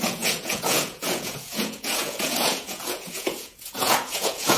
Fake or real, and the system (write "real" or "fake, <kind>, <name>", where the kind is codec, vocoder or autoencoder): fake, vocoder, Vocos